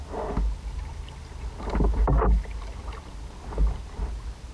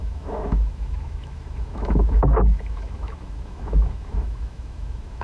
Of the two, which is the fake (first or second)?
second